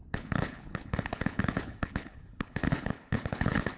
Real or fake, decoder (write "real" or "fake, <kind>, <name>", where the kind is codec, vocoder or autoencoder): fake, codec, HILCodec